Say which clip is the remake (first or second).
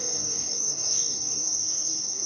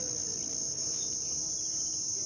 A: first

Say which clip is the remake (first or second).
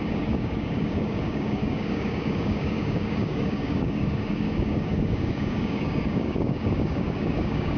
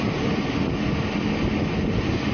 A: first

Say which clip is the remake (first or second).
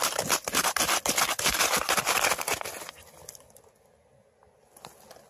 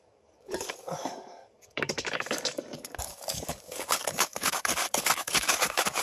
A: second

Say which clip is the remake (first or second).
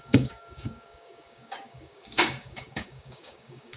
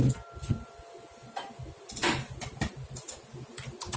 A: first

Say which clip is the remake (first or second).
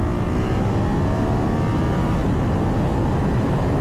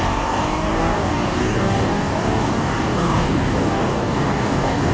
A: second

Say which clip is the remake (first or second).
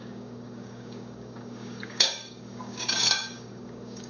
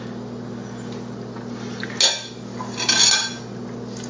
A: first